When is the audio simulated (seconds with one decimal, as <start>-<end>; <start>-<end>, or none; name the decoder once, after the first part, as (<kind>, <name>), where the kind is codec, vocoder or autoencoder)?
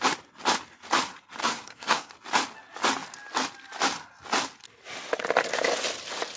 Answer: 1.4-2.1 (codec, SNAC)